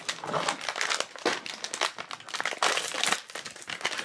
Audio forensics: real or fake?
real